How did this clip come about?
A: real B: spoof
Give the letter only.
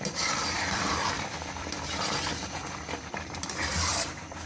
B